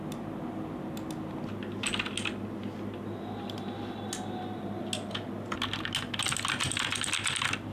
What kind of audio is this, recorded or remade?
recorded